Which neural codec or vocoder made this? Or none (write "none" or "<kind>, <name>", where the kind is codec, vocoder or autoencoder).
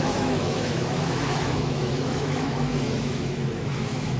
autoencoder, DAC-VAE